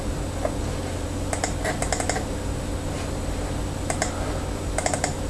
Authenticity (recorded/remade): recorded